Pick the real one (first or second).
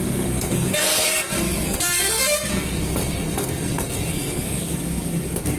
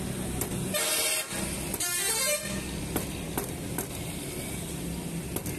second